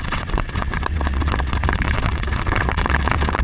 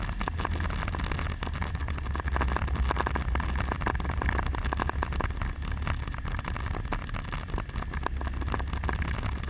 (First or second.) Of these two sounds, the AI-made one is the first